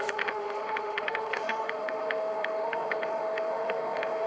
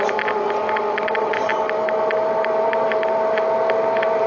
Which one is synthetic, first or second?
first